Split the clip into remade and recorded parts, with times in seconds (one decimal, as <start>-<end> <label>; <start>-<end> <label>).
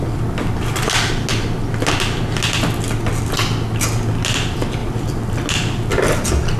0.0-6.6 recorded